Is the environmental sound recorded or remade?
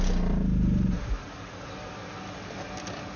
recorded